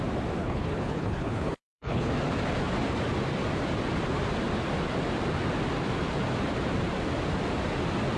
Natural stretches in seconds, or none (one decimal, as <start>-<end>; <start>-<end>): 0.0-0.4; 2.1-8.2